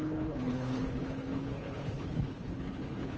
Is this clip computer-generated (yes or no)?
yes